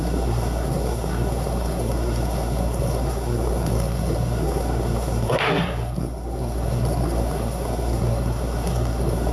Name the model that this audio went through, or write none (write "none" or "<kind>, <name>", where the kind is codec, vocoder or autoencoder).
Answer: codec, SNAC